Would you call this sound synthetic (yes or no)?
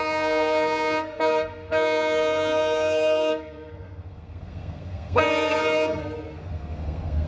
yes